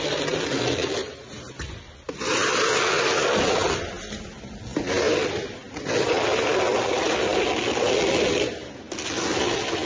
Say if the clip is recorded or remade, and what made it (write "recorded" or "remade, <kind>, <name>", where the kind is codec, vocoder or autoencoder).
recorded